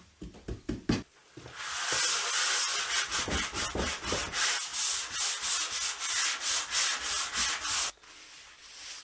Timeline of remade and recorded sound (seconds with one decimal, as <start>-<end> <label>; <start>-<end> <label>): 0.0-9.0 recorded